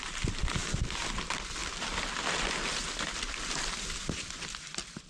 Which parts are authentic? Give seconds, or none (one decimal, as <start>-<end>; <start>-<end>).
0.0-5.1

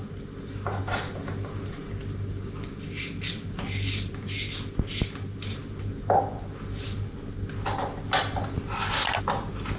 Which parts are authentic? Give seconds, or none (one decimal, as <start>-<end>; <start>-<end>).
0.0-9.8

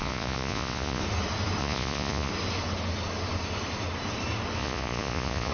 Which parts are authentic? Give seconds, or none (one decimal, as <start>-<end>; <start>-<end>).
1.0-1.6; 2.3-4.6

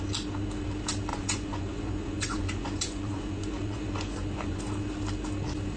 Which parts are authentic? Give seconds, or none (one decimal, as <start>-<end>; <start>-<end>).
0.0-1.1; 4.6-5.8